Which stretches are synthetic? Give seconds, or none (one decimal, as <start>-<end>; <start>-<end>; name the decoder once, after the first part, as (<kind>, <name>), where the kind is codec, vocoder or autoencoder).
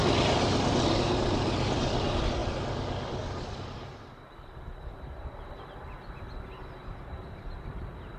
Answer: 3.9-5.5 (vocoder, BigVGAN v2); 6.8-8.2